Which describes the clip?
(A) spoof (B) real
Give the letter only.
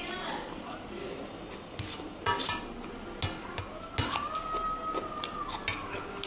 B